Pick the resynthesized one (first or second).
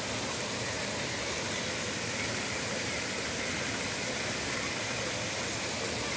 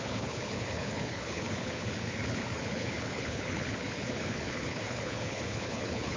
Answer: second